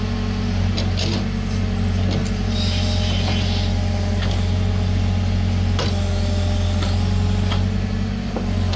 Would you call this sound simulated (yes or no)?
no